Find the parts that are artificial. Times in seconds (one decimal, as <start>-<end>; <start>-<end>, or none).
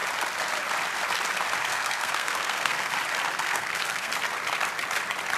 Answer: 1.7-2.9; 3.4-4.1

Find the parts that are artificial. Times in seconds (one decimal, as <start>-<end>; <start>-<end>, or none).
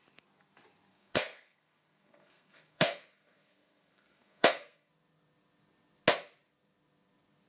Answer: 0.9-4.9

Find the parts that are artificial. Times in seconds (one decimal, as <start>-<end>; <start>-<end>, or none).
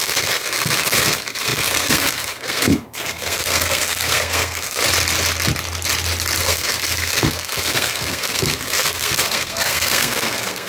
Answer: 0.0-4.8; 6.4-10.7